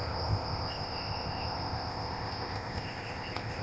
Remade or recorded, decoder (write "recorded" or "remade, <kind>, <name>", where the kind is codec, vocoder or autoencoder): remade, codec, ZipCodec